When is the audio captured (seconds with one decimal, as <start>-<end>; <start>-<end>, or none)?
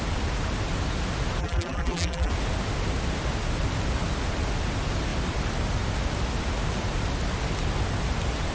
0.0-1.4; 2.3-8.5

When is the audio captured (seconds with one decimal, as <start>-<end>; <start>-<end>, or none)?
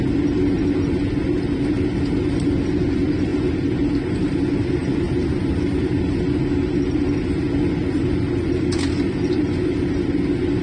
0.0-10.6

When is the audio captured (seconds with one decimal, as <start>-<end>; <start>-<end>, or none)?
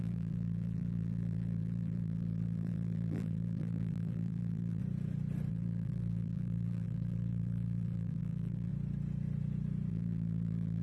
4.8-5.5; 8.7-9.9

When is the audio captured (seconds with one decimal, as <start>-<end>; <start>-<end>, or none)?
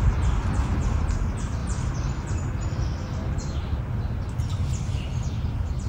0.0-1.6; 3.8-5.9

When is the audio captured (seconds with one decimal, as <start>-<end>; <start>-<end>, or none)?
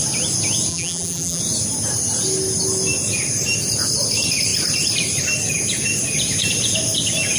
0.0-0.7; 1.4-7.4